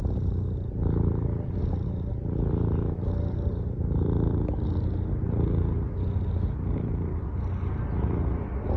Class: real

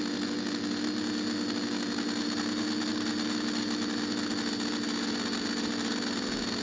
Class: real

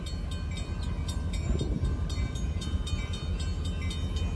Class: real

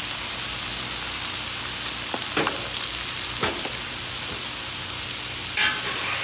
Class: real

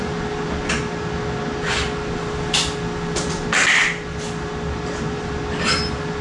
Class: real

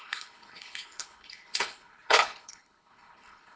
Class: fake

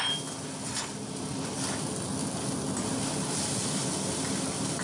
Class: real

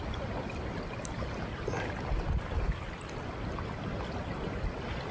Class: real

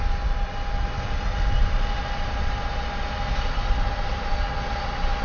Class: real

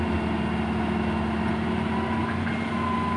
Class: real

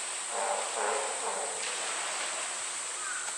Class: real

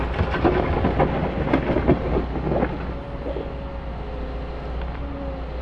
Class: real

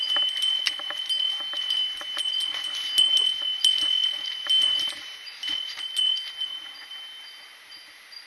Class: real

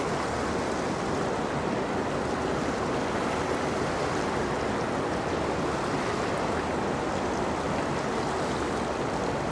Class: real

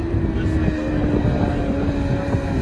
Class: real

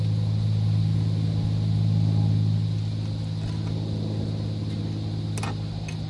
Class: real